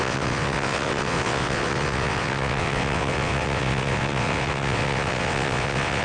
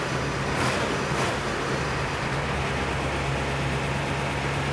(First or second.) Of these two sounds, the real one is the second